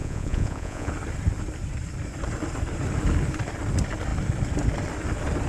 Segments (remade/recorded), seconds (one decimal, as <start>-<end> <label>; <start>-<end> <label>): 0.0-0.9 remade; 0.9-5.5 recorded